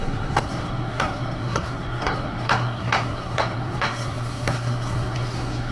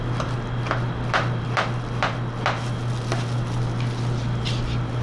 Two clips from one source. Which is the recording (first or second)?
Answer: second